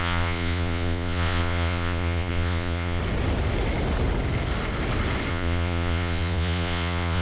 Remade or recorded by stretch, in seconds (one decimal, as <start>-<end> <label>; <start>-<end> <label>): 0.0-3.0 remade; 3.0-5.3 recorded; 5.3-7.2 remade